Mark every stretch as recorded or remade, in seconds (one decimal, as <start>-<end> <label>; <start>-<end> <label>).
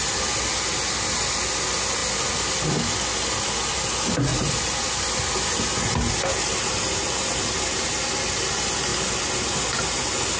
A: 0.0-4.3 recorded; 4.3-5.0 remade; 5.0-10.4 recorded